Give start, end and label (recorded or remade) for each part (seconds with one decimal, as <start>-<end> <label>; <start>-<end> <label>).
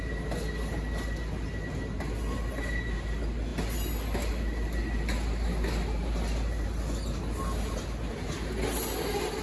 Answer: 0.0-9.4 recorded